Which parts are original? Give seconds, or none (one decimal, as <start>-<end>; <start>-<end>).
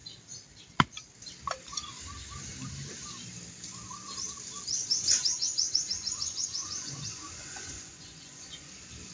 0.0-4.8; 8.7-9.1